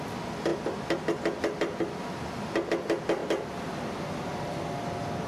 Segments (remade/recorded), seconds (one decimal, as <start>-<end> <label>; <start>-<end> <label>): 0.0-5.3 recorded